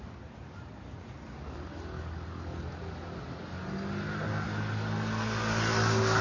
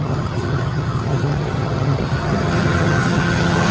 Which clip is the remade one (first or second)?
second